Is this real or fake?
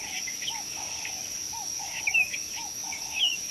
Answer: fake